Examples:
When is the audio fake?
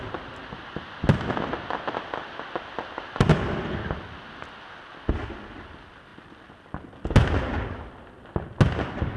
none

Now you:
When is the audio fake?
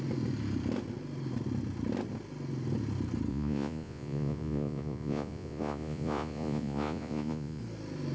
3.3-7.6 (vocoder, Vocos)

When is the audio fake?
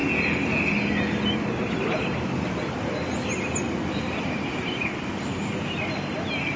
none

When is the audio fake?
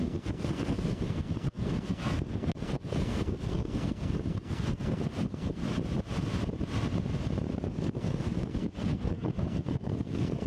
0.0-5.6 (codec, SNAC); 7.7-10.5